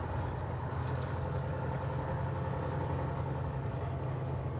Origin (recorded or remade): remade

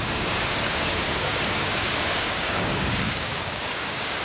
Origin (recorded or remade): remade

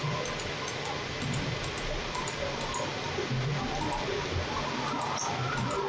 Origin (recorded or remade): recorded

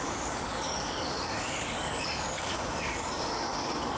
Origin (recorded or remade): remade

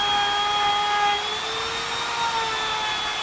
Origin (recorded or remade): recorded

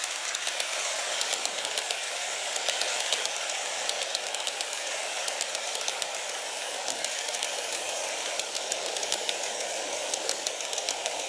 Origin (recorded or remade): remade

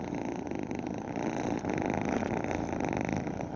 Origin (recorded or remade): recorded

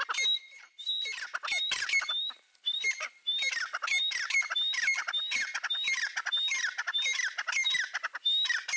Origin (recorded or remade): recorded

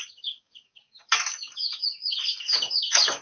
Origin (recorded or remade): remade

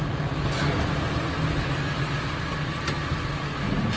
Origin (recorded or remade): recorded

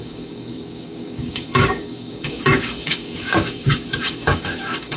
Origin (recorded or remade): remade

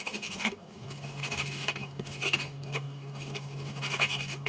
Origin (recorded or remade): remade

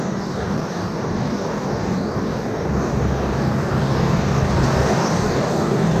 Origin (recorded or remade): remade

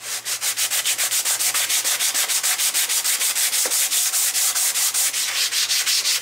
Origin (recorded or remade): recorded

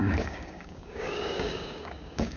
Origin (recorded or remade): remade